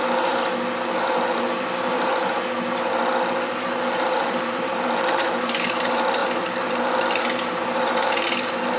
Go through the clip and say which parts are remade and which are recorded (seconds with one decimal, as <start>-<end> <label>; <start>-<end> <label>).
0.0-1.0 recorded; 1.0-2.1 remade; 2.1-3.0 recorded; 3.0-8.8 remade